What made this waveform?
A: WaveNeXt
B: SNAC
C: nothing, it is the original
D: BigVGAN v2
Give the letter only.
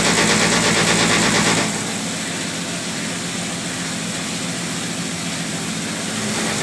C